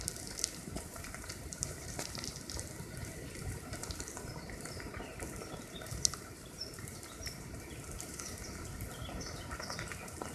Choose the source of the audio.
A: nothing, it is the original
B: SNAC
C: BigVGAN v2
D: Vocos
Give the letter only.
C